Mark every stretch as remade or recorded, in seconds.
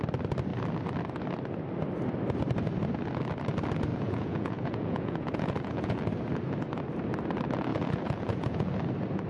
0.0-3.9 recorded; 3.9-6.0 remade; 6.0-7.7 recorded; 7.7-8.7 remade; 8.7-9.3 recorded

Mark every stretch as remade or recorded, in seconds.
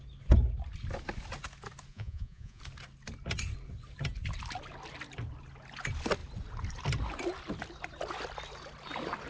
0.0-1.9 recorded; 1.9-2.6 remade; 2.6-9.3 recorded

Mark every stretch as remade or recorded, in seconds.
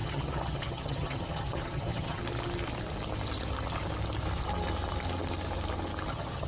0.0-2.2 remade; 2.2-6.1 recorded; 6.1-6.5 remade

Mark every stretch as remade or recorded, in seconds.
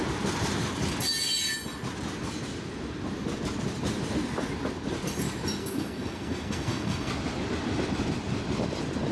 0.0-5.6 recorded; 5.6-7.1 remade; 7.1-9.1 recorded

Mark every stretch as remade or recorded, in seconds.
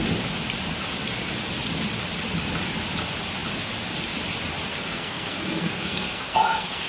0.0-4.7 recorded; 4.7-6.9 remade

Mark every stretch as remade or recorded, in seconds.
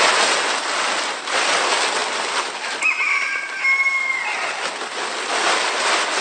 0.0-6.2 recorded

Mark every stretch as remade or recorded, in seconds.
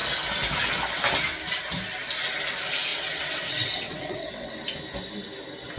0.0-2.9 recorded; 2.9-4.6 remade; 4.6-5.8 recorded